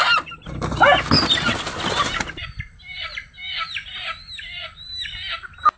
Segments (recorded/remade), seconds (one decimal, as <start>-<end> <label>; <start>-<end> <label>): 0.0-5.8 recorded